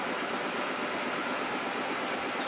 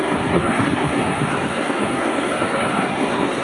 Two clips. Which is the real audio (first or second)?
first